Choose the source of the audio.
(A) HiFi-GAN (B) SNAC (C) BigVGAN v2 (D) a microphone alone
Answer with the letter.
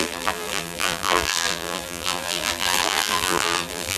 C